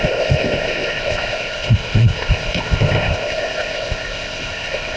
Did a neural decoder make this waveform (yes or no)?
yes